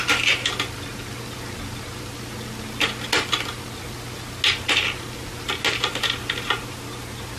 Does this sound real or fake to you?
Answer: real